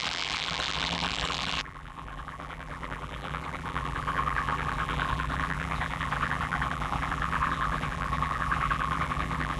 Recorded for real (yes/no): no